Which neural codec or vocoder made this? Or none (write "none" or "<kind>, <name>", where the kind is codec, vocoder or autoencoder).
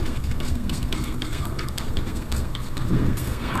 codec, SNAC